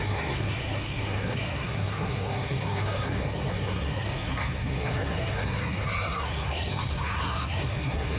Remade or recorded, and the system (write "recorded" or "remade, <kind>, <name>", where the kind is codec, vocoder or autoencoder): remade, codec, SNAC